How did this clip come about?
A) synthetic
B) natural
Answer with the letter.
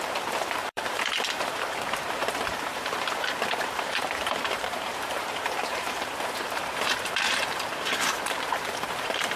A